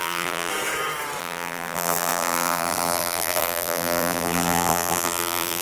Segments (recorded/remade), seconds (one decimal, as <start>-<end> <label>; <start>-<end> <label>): 0.0-0.5 remade; 0.5-1.2 recorded; 1.2-5.6 remade